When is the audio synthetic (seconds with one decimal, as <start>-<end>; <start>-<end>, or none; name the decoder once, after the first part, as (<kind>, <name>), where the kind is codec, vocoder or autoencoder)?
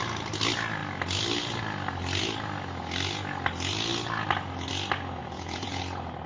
5.2-5.8 (vocoder, Vocos)